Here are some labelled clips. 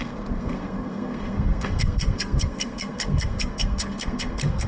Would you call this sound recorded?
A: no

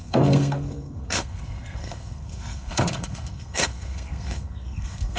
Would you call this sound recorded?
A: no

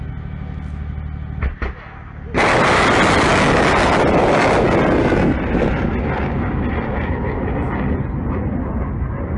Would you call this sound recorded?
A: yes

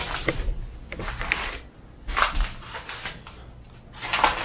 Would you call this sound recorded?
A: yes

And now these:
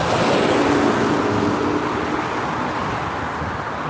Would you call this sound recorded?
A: yes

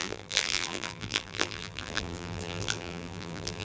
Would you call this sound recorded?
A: no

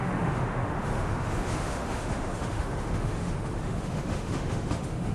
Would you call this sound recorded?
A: no